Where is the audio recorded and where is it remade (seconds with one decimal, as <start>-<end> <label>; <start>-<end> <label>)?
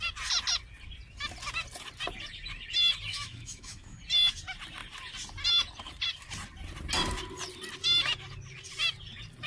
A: 0.0-3.1 recorded; 3.1-4.0 remade; 4.0-9.5 recorded